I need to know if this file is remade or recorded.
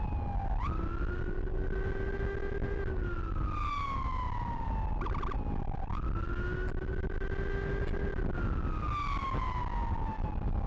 recorded